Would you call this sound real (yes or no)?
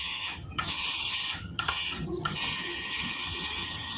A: no